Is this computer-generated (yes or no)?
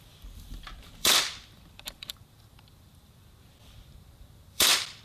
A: yes